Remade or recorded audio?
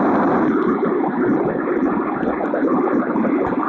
remade